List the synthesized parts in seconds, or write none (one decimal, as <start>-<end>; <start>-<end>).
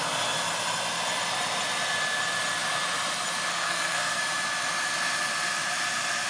3.5-4.2